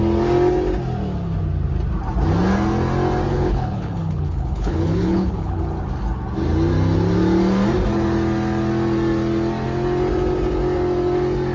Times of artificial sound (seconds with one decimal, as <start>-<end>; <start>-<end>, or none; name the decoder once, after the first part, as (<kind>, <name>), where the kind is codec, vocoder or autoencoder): 3.3-5.6 (codec, HILCodec)